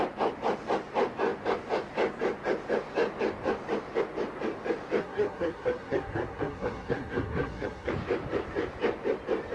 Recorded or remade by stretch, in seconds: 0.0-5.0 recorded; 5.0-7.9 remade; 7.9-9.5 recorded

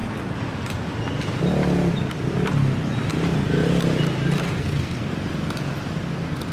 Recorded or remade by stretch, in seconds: 0.0-4.6 recorded; 4.6-5.1 remade; 5.1-6.5 recorded

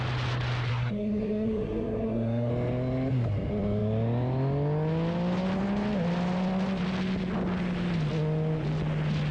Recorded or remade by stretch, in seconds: 0.0-0.7 recorded; 0.7-2.5 remade; 2.5-9.3 recorded